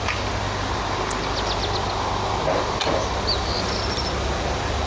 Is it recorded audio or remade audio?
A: recorded